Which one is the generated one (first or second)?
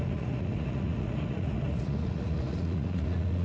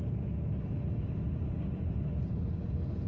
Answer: first